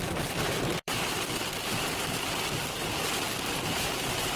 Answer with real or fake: fake